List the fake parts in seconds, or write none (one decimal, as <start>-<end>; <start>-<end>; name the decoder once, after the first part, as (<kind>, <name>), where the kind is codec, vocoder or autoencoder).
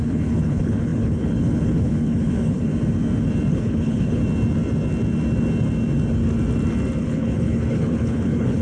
0.0-2.7 (codec, HILCodec); 3.5-4.2; 7.0-8.6